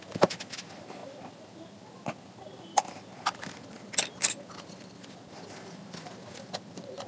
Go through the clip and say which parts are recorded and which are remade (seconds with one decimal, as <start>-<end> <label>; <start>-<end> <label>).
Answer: 0.0-7.1 recorded